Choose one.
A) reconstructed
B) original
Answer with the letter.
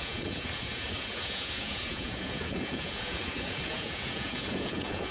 A